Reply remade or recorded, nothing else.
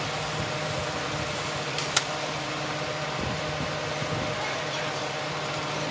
recorded